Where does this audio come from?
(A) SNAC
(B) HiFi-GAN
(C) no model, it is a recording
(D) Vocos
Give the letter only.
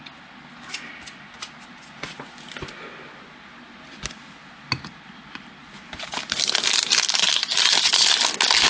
C